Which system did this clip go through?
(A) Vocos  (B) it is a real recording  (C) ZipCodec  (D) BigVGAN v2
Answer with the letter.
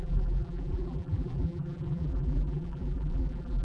D